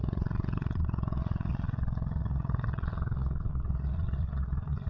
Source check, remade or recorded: remade